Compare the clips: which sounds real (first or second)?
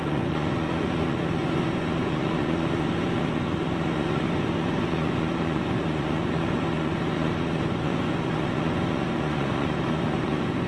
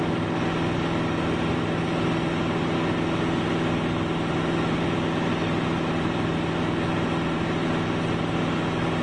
second